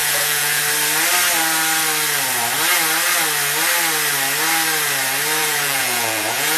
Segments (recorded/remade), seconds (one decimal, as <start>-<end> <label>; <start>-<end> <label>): 0.0-0.6 remade; 0.6-5.4 recorded; 5.4-6.6 remade